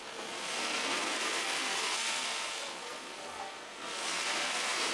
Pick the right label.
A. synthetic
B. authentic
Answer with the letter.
A